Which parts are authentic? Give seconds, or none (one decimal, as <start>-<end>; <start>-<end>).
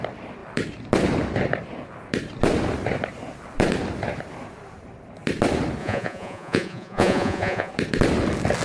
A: 0.0-5.8; 7.7-8.6